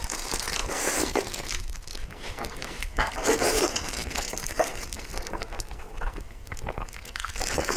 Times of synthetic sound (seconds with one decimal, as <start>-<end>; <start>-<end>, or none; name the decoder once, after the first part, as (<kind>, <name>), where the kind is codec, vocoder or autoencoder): 0.0-7.8 (codec, SNAC)

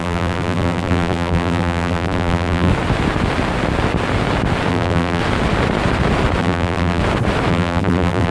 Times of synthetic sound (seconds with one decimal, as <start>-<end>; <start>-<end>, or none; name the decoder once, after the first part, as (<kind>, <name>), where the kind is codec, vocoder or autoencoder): 0.0-2.7 (vocoder, BigVGAN v2); 4.7-5.2; 6.4-7.0; 7.5-8.3

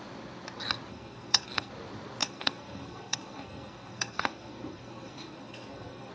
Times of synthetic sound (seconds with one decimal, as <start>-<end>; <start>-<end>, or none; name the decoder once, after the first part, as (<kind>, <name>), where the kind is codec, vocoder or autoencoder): 0.9-1.7 (codec, SNAC); 2.2-6.1

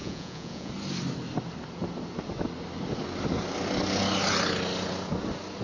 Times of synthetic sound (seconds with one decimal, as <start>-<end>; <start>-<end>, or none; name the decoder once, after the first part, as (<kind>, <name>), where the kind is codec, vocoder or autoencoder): 0.0-0.7 (vocoder, Vocos)